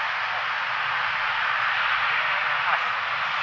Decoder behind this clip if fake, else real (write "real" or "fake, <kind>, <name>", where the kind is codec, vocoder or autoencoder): real